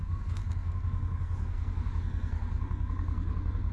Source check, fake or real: fake